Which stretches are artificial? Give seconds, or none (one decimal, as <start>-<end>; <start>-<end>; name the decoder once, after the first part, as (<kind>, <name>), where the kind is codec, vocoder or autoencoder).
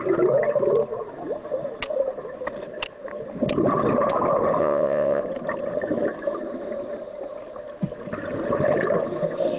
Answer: 4.6-5.2 (vocoder, WaveNeXt)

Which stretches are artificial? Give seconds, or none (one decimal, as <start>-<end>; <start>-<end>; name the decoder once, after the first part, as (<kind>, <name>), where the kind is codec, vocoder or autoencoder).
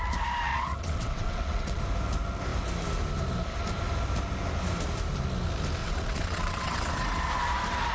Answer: 0.5-1.8 (vocoder, WaveNeXt); 5.8-6.9